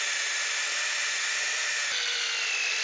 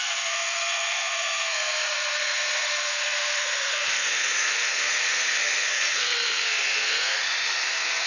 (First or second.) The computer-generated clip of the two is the second